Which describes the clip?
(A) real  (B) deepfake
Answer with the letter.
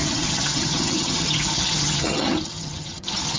B